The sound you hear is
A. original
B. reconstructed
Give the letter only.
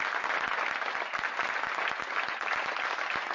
A